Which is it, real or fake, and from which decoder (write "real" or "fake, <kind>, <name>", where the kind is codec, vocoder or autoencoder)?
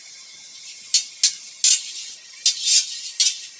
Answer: real